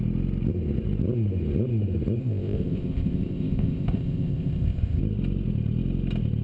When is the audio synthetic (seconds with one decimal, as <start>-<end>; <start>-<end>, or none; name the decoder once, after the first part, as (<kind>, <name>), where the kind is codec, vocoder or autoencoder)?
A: 2.2-5.0 (codec, ZipCodec)